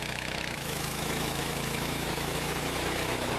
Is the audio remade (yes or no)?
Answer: yes